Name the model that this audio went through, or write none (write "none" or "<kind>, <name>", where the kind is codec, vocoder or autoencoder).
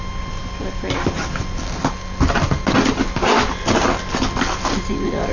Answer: none